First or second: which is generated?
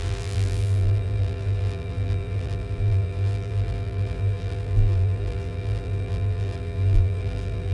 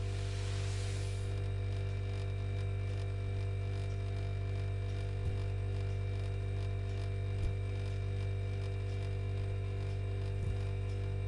first